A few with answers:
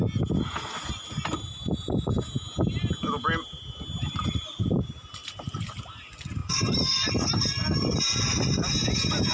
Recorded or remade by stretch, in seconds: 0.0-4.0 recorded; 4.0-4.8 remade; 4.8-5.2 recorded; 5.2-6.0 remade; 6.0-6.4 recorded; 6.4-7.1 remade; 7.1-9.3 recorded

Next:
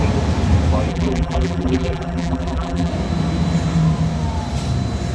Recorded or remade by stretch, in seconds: 0.0-0.9 recorded; 0.9-2.9 remade; 2.9-5.1 recorded

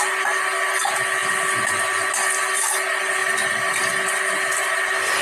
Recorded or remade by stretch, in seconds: 0.0-1.2 recorded; 1.2-2.1 remade; 2.1-3.2 recorded; 3.2-4.5 remade; 4.5-5.2 recorded

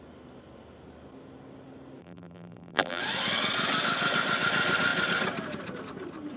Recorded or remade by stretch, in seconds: 0.0-2.0 recorded; 2.0-3.0 remade; 3.0-6.4 recorded

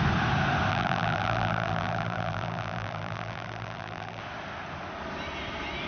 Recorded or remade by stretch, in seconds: 0.0-0.7 recorded; 0.7-4.2 remade; 4.2-5.9 recorded

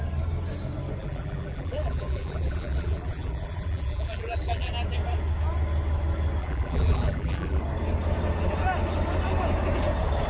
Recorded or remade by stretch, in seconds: 0.0-1.0 recorded; 1.0-4.7 remade; 4.7-6.4 recorded; 6.4-7.6 remade; 7.6-10.3 recorded

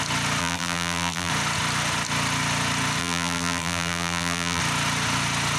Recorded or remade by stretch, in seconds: 0.0-0.4 recorded; 0.4-1.3 remade; 1.3-3.0 recorded; 3.0-4.6 remade; 4.6-5.6 recorded